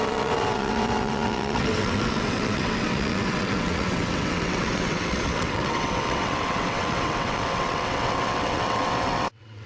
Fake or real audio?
fake